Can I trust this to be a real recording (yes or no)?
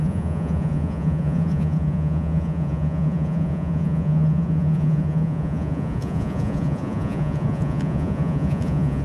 no